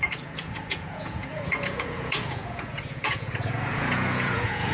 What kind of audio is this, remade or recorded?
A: remade